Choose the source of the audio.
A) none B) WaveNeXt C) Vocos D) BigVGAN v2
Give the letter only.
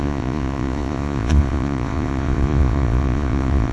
C